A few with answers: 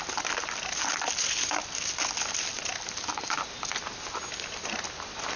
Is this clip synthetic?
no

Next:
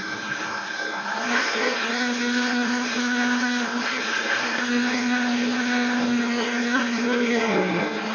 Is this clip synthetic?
yes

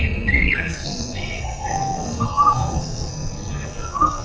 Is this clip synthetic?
yes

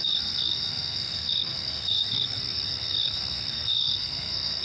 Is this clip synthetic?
yes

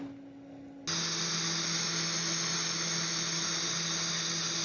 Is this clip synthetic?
no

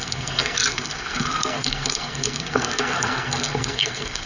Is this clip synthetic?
yes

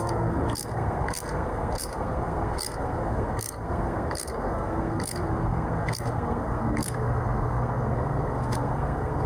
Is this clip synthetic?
yes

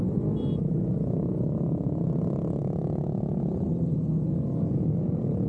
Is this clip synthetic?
no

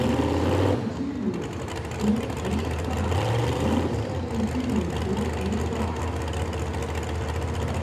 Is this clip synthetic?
no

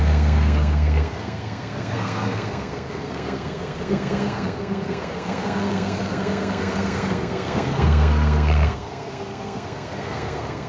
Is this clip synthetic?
yes